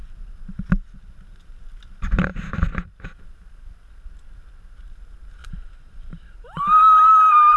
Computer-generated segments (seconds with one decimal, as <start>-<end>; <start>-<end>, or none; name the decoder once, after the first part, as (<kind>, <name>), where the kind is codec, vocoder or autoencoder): 5.4-7.6 (vocoder, BigVGAN v2)